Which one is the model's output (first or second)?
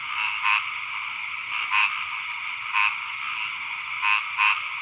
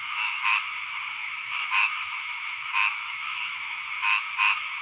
second